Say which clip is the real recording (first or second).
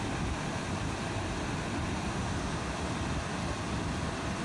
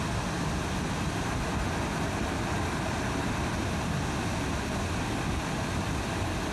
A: second